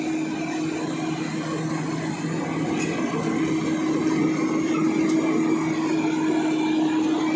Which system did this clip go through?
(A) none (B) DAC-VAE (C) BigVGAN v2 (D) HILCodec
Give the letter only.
A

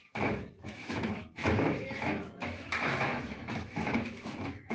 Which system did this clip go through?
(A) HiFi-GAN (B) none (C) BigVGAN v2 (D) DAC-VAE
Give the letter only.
D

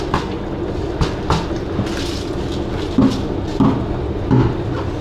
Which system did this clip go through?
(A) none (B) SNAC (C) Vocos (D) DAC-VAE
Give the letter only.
A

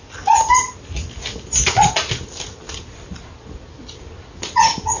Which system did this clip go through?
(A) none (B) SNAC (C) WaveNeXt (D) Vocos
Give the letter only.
A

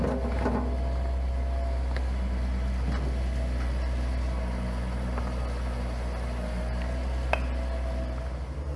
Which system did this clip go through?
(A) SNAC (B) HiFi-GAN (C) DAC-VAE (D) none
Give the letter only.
D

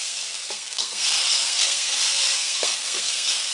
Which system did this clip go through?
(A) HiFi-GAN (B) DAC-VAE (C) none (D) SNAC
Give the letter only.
D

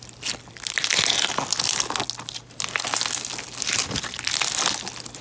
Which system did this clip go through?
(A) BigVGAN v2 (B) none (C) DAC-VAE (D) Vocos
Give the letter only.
B